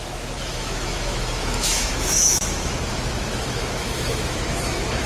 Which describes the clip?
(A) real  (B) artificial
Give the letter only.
B